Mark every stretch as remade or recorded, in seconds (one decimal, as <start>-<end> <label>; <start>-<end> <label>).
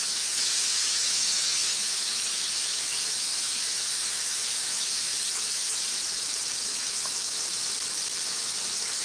0.0-7.7 remade; 7.7-8.3 recorded; 8.3-9.0 remade